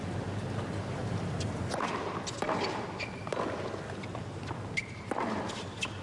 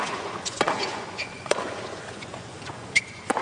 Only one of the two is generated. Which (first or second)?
second